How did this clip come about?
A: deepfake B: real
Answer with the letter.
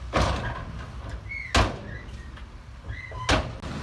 B